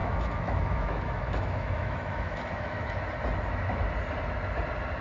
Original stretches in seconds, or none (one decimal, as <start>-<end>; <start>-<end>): 3.0-5.0